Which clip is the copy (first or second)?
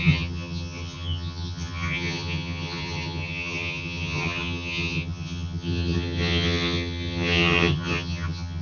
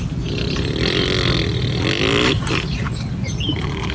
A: first